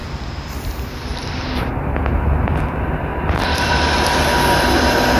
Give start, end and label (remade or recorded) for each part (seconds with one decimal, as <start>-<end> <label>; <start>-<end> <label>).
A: 0.0-0.7 remade; 0.7-1.1 recorded; 1.1-1.7 remade; 1.7-3.1 recorded; 3.1-3.7 remade; 3.7-5.2 recorded